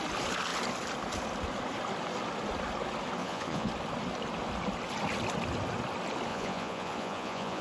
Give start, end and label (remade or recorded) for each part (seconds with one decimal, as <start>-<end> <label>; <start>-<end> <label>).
0.0-3.2 recorded; 3.2-3.7 remade; 3.7-6.3 recorded; 6.3-7.6 remade